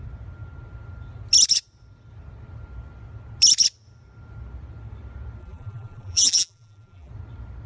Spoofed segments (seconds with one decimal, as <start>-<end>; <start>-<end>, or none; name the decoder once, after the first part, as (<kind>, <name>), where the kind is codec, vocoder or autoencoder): 5.4-7.1 (vocoder, BigVGAN v2)